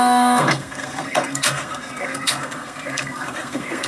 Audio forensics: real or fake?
fake